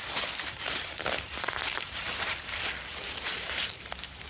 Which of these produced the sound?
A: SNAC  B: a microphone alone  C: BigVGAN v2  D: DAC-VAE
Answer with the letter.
C